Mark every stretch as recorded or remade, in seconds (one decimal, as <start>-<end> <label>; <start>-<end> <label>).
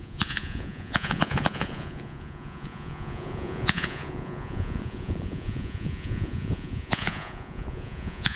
0.0-8.4 remade